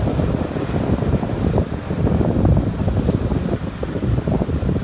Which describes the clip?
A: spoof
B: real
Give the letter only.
B